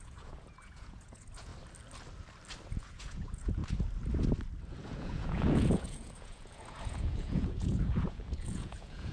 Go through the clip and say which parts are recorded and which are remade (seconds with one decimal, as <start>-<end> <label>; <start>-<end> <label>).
0.0-1.5 remade; 1.5-2.7 recorded; 2.7-3.6 remade; 3.6-4.7 recorded; 4.7-9.1 remade